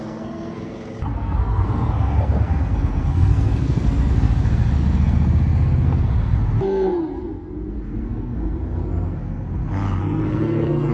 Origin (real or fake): fake